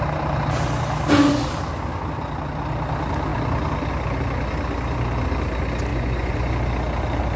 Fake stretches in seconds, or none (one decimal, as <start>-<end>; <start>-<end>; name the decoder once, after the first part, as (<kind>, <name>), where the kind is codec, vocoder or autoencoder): 5.9-6.5 (vocoder, Vocos)